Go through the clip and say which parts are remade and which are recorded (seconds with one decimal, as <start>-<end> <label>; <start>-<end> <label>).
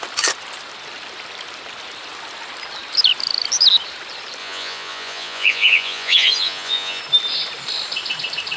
0.0-4.4 recorded; 4.4-7.0 remade; 7.0-8.6 recorded